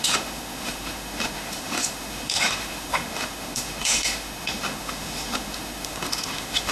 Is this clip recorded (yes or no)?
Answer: no